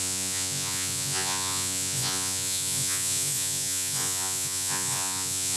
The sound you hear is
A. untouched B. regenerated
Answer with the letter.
B